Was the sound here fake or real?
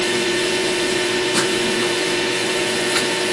fake